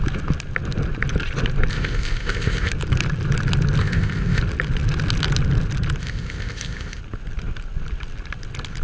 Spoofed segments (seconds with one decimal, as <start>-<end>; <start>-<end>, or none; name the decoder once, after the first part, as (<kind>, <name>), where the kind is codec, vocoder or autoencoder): 1.7-2.7 (codec, ZipCodec); 3.8-4.4; 6.0-7.0